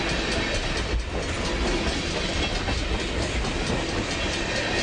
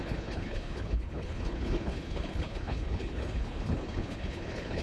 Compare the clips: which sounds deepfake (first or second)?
second